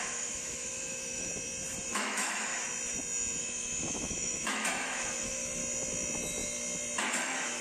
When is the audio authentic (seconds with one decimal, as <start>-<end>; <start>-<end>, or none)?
1.3-1.9; 2.5-3.4; 5.6-7.1

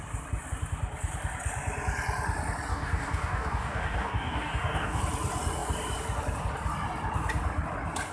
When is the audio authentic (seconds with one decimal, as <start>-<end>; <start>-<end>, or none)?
0.0-2.7; 5.0-8.1

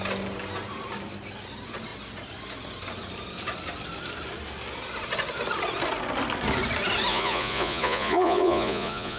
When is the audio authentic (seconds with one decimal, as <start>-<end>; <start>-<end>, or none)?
0.0-7.1